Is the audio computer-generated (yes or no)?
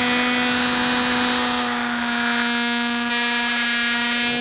no